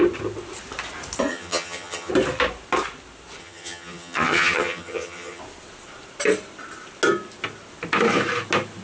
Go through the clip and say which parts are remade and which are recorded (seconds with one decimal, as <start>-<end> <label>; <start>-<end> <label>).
0.0-1.3 recorded; 1.3-2.1 remade; 2.1-3.4 recorded; 3.4-5.4 remade; 5.4-8.8 recorded